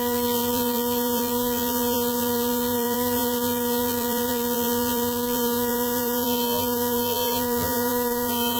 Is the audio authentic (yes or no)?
no